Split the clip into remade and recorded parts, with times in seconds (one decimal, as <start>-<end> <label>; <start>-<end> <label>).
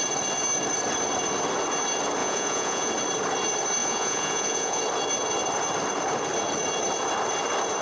0.0-2.2 recorded; 2.2-2.9 remade; 2.9-3.8 recorded; 3.8-4.8 remade; 4.8-7.8 recorded